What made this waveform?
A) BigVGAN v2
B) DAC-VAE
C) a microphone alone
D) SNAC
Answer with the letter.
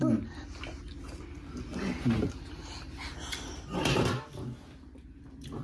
C